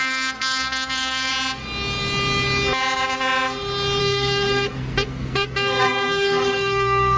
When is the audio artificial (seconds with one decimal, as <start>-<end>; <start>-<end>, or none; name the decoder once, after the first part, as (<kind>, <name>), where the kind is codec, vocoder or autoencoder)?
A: 0.0-1.3 (codec, SNAC); 4.0-7.2